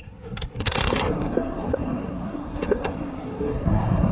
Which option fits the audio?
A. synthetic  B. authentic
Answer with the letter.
A